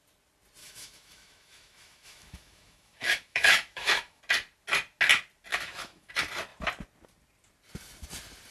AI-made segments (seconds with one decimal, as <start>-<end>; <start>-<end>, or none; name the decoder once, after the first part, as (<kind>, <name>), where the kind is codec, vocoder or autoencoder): 0.6-4.2 (autoencoder, DAC-VAE); 5.5-6.1